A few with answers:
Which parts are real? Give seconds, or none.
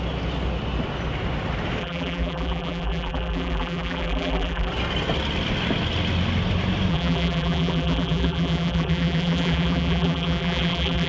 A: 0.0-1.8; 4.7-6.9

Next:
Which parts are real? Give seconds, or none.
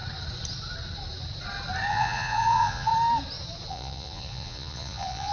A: 0.0-1.9; 2.9-3.7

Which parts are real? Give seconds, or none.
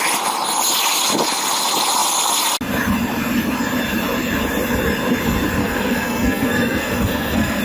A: 0.0-5.6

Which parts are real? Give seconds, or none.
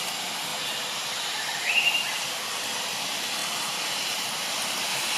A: 0.0-0.5; 1.5-5.2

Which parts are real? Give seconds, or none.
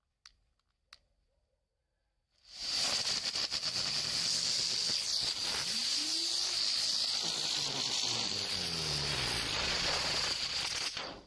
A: 0.0-9.6; 10.6-11.3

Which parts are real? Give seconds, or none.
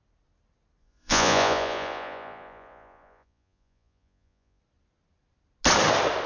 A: 0.0-0.8; 4.6-6.3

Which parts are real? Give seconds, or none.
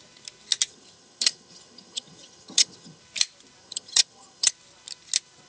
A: 0.0-0.7; 3.0-3.6; 4.5-5.5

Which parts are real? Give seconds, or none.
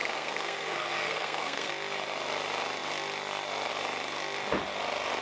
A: 1.7-5.2